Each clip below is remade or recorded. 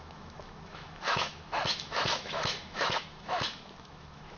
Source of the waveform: remade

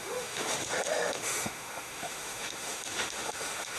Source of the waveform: remade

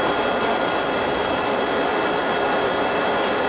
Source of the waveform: recorded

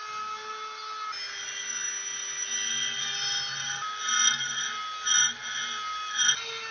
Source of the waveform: recorded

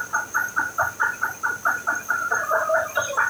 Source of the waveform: recorded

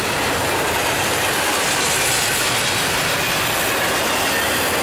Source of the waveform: recorded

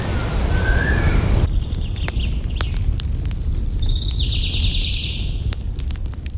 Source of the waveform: recorded